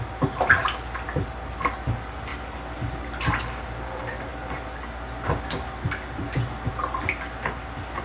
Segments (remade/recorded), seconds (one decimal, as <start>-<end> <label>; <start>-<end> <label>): 0.0-8.0 recorded